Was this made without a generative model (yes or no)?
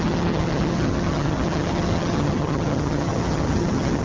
no